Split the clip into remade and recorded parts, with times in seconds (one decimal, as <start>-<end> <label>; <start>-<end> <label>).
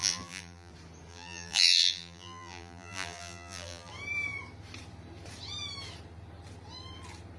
0.0-0.7 remade; 0.7-1.1 recorded; 1.1-3.9 remade; 3.9-7.4 recorded